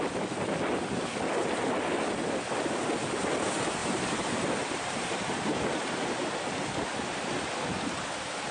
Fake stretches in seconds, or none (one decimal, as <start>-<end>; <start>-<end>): 3.8-5.1